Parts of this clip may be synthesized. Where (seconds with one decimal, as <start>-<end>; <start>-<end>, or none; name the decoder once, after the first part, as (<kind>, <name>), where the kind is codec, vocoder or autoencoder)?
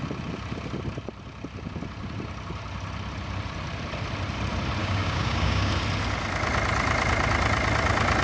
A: 4.8-5.7 (codec, DAC)